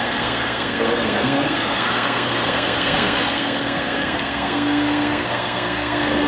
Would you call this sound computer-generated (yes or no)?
yes